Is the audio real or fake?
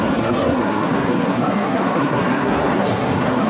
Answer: fake